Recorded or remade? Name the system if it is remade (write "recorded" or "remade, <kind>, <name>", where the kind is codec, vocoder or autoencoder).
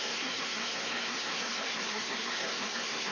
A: remade, codec, SNAC